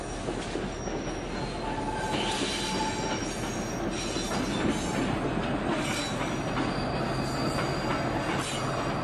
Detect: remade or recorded recorded